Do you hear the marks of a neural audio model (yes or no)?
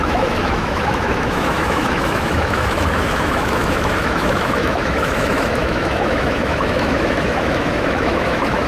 yes